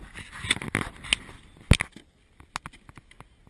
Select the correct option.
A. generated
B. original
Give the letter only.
B